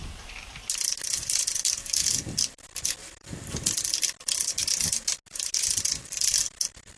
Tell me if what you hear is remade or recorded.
recorded